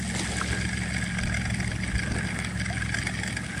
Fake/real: real